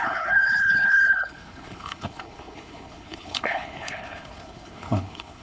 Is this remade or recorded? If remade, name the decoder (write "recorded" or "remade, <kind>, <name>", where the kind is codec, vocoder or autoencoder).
remade, codec, HILCodec